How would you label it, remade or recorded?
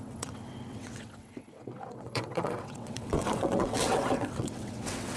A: remade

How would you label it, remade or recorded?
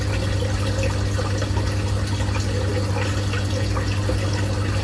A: recorded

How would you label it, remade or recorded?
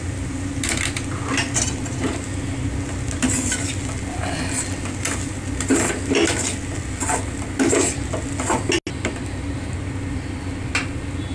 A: recorded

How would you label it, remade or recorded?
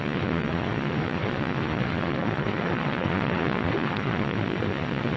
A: remade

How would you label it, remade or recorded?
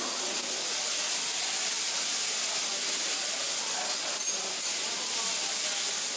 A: recorded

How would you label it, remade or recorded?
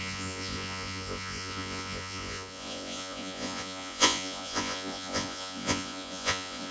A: remade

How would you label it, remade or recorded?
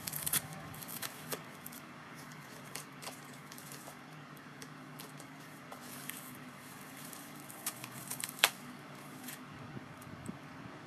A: remade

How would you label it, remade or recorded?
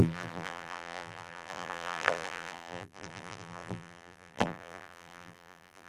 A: remade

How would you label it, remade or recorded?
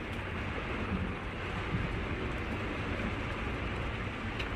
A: recorded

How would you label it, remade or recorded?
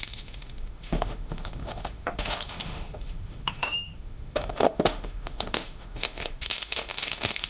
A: remade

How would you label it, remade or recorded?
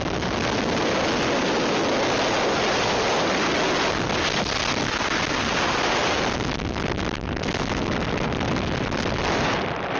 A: recorded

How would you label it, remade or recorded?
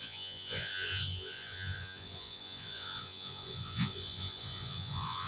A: remade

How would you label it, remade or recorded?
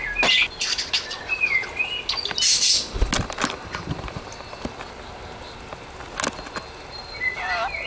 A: recorded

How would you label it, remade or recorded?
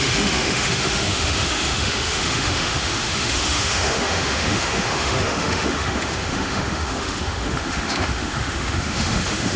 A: remade